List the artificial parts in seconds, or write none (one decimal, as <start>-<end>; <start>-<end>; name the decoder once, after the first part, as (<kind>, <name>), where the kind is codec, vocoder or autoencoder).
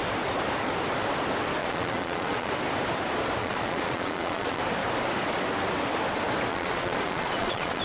1.6-2.5 (vocoder, Vocos); 3.4-4.6; 6.5-7.8